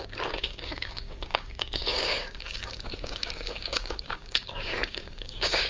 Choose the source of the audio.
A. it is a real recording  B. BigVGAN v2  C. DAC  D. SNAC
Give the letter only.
C